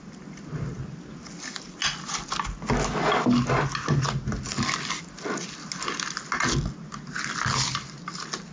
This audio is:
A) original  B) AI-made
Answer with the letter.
A